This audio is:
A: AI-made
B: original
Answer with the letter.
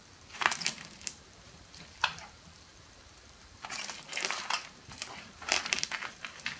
A